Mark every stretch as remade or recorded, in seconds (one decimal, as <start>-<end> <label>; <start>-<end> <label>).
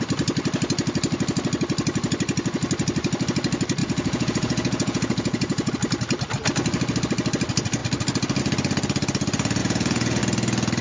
0.0-3.8 recorded; 3.8-5.7 remade; 5.7-9.6 recorded; 9.6-10.2 remade; 10.2-10.8 recorded